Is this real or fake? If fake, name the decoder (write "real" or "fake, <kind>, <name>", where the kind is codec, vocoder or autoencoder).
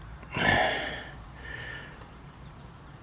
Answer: fake, vocoder, BigVGAN v2